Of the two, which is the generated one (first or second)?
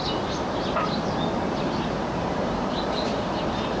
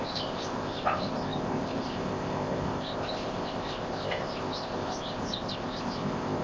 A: second